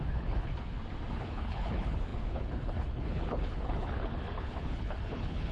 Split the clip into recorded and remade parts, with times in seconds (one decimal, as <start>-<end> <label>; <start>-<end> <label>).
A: 0.0-0.5 remade; 0.5-1.1 recorded; 1.1-5.5 remade